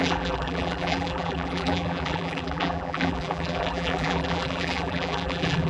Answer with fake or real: fake